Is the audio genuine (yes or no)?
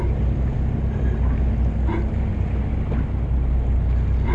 yes